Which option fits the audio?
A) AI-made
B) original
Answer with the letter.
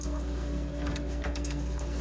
A